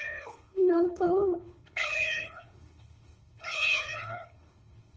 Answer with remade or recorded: remade